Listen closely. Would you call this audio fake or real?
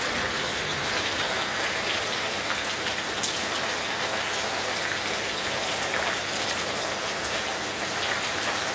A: real